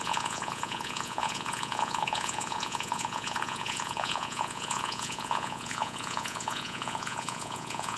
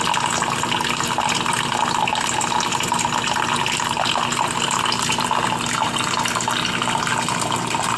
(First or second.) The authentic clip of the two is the second